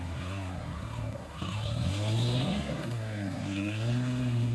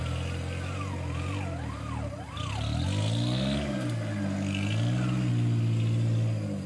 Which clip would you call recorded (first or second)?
second